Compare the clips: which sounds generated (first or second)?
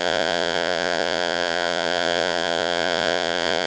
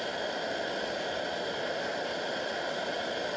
first